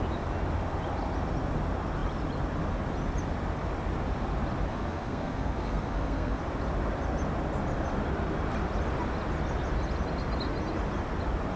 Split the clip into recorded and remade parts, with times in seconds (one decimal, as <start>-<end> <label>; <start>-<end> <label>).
0.0-4.7 recorded; 4.7-6.4 remade; 6.4-11.6 recorded

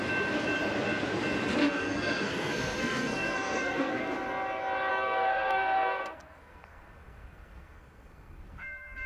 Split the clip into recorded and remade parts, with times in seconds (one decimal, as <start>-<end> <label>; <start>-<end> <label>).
0.0-1.6 recorded; 1.6-4.0 remade; 4.0-4.9 recorded; 4.9-9.1 remade

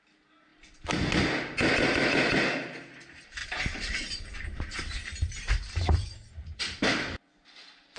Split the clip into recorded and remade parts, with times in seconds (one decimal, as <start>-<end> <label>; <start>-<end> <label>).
0.0-3.4 recorded; 3.4-6.3 remade; 6.3-8.0 recorded

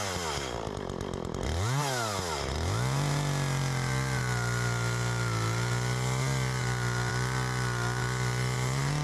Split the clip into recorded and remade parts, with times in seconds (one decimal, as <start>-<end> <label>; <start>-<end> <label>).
0.0-9.0 recorded

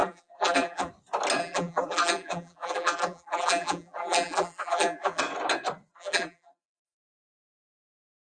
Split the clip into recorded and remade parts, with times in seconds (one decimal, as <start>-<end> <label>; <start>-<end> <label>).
0.0-0.9 remade; 0.9-1.4 recorded; 1.4-5.2 remade; 5.2-5.9 recorded; 5.9-7.9 remade; 7.9-8.4 recorded

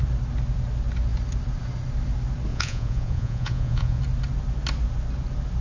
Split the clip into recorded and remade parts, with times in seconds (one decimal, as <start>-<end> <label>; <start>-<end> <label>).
0.0-2.5 recorded; 2.5-4.0 remade; 4.0-5.6 recorded